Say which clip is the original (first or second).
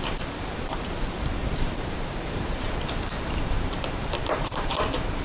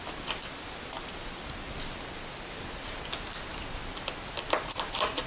second